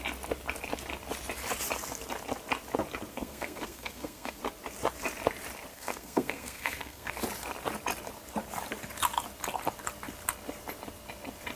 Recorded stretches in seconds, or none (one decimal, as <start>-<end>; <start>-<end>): 0.0-3.1; 4.4-5.7; 7.1-11.6